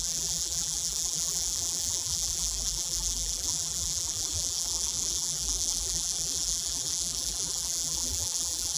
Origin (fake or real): fake